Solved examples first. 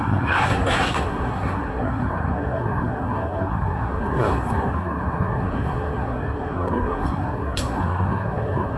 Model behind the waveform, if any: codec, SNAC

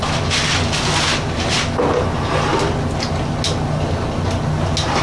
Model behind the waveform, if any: none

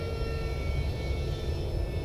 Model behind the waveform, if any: none